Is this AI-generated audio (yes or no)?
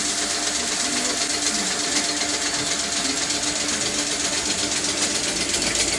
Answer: no